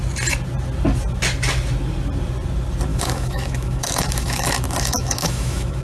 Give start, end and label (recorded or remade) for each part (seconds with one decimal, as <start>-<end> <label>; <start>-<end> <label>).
0.0-2.9 recorded; 2.9-5.8 remade